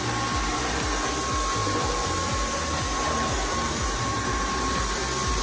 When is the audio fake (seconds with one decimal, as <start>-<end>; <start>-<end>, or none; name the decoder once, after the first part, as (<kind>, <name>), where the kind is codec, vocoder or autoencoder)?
1.6-4.8 (vocoder, BigVGAN v2)